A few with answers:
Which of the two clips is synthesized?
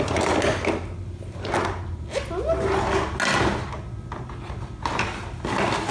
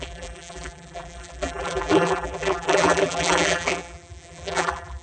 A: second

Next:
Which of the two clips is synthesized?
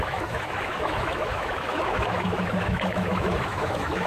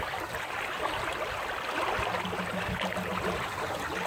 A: first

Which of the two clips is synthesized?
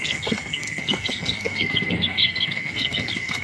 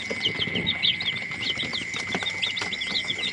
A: first